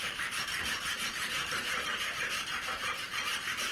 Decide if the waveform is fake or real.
fake